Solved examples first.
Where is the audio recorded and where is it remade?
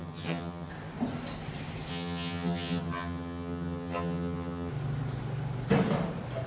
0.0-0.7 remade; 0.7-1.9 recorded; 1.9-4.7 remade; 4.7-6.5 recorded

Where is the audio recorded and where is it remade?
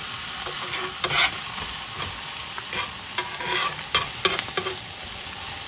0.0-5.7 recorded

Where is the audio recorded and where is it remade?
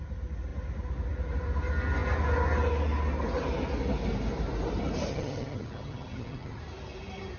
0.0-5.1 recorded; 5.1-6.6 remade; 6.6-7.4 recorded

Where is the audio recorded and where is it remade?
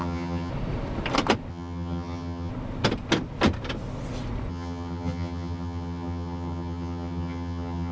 0.0-0.5 remade; 0.5-1.5 recorded; 1.5-2.5 remade; 2.5-4.5 recorded; 4.5-7.9 remade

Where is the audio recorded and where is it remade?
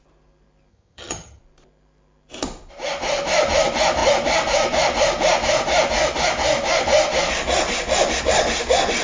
0.0-0.7 recorded; 0.7-1.4 remade; 1.4-9.0 recorded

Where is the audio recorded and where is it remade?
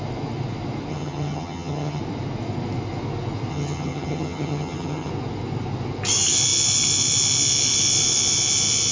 0.0-0.9 recorded; 0.9-2.0 remade; 2.0-3.5 recorded; 3.5-5.1 remade; 5.1-8.9 recorded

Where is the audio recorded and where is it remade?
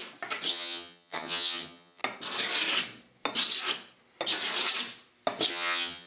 0.0-0.5 recorded; 0.5-2.0 remade; 2.0-5.5 recorded; 5.5-6.1 remade